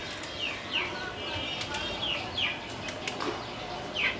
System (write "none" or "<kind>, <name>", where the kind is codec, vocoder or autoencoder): none